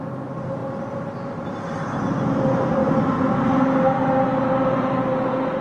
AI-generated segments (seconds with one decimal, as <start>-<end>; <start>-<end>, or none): none